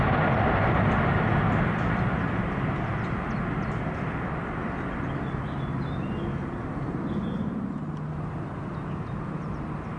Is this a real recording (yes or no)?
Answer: yes